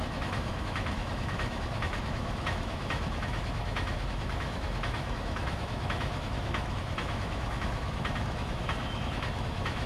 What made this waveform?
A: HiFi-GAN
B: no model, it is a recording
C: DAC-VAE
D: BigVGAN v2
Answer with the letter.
C